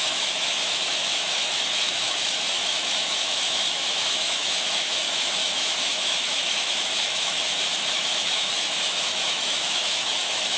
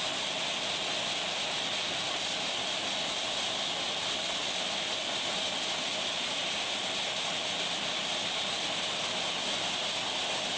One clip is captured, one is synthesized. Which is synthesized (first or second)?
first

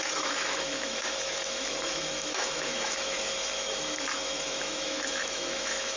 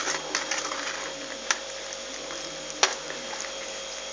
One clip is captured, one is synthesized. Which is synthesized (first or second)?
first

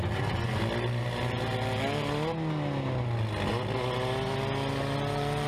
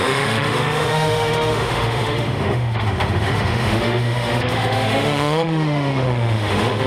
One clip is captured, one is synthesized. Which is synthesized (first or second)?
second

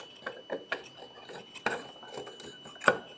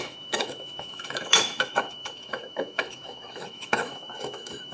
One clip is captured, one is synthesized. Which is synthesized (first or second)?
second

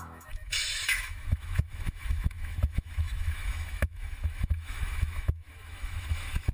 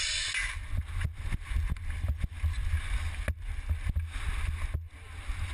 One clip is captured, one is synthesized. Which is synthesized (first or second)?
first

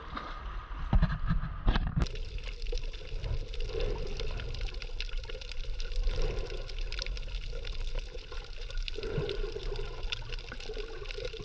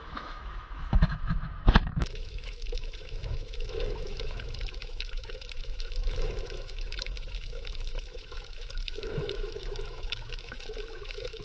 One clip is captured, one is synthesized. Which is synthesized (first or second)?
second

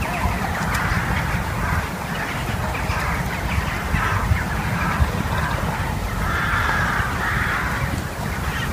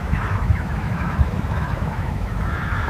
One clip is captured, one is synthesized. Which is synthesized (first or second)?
second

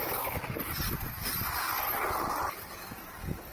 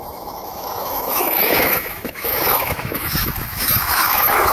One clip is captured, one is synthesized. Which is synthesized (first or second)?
second